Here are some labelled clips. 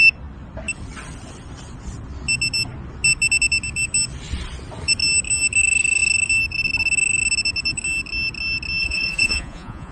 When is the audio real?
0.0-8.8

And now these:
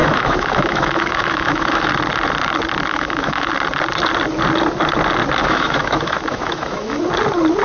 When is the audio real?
1.9-2.9; 3.5-5.4; 7.0-7.6

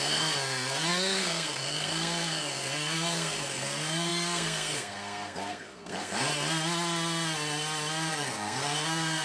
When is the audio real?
6.3-8.1

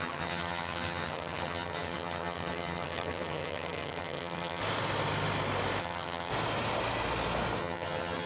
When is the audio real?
4.6-5.8; 6.3-7.6

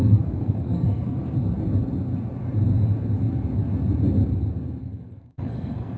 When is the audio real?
1.2-4.8

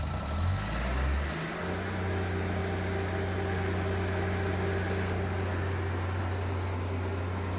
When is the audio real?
0.0-7.6

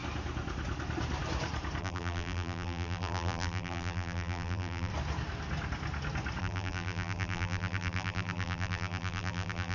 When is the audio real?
0.0-1.8; 4.9-6.4